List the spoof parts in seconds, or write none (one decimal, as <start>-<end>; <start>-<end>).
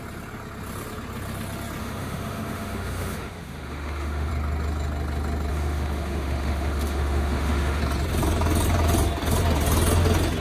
1.8-4.3; 5.5-7.8